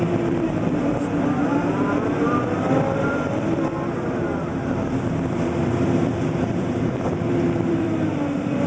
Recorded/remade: remade